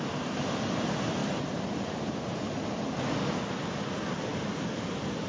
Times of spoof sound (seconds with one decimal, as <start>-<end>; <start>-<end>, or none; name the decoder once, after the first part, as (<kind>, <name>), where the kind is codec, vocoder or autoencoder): 1.2-2.6 (vocoder, BigVGAN v2)